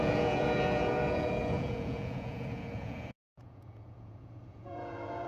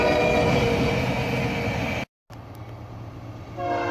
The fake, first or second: first